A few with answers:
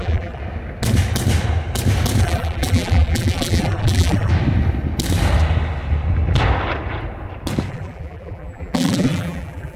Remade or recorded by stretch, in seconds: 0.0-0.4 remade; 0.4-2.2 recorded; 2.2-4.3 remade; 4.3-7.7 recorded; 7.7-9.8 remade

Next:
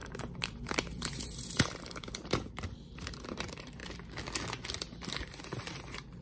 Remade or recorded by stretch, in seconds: 0.0-3.8 remade; 3.8-5.4 recorded; 5.4-6.2 remade

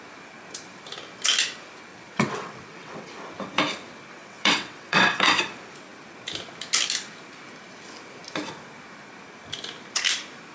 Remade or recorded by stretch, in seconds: 0.0-1.9 recorded; 1.9-3.1 remade; 3.1-4.2 recorded; 4.2-5.4 remade; 5.4-10.5 recorded

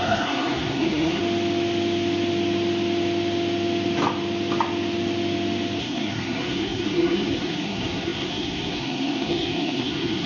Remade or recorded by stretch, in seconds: 0.0-1.2 remade; 1.2-5.8 recorded; 5.8-10.3 remade